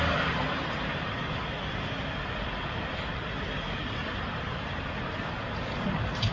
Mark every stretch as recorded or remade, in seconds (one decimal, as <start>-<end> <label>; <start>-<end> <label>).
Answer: 0.0-1.2 remade; 1.2-3.0 recorded; 3.0-6.3 remade